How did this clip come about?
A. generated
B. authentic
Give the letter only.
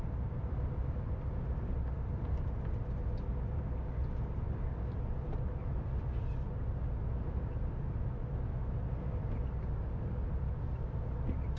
B